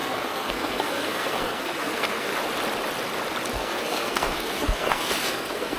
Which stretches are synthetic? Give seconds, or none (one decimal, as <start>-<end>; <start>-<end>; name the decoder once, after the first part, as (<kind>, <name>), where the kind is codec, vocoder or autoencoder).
0.0-2.3 (codec, SNAC); 3.5-5.8